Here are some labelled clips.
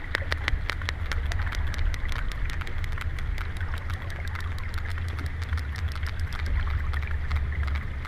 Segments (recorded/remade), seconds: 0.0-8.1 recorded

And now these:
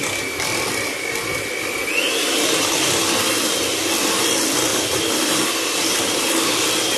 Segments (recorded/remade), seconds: 0.0-4.7 recorded; 4.7-5.4 remade; 5.4-7.0 recorded

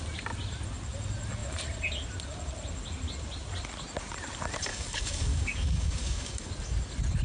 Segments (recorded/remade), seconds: 0.0-4.7 recorded; 4.7-6.5 remade; 6.5-7.2 recorded

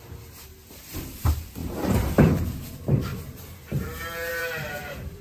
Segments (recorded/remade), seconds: 0.0-0.5 remade; 0.5-1.0 recorded; 1.0-5.2 remade

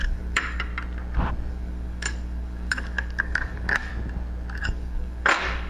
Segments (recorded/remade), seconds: 0.0-0.7 remade; 0.7-1.5 recorded; 1.5-3.9 remade; 3.9-4.6 recorded; 4.6-5.7 remade

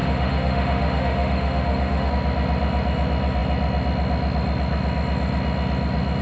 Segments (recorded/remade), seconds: 0.0-2.1 remade; 2.1-6.2 recorded

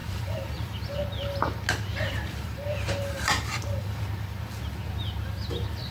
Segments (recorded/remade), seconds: 0.0-1.0 remade; 1.0-1.9 recorded; 1.9-4.0 remade; 4.0-5.9 recorded